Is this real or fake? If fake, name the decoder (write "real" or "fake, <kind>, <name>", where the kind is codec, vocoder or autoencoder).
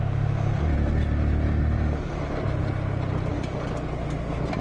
real